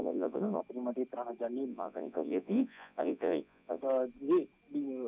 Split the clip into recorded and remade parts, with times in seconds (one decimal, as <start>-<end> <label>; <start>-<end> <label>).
0.0-0.6 remade; 0.6-1.7 recorded; 1.7-3.8 remade; 3.8-5.1 recorded